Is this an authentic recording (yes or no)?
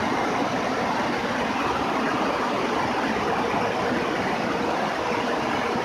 yes